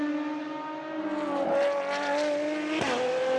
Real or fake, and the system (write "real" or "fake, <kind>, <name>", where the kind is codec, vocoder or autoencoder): real